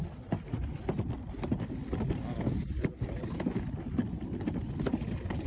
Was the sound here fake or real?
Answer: real